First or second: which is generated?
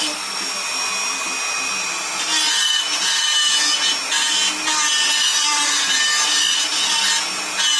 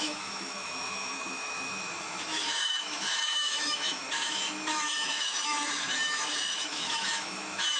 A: second